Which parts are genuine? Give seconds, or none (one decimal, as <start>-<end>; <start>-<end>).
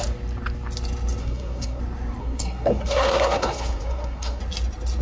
0.0-1.2; 1.8-2.2; 4.4-5.0